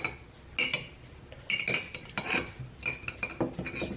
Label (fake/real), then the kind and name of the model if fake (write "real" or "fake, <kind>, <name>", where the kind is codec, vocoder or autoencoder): real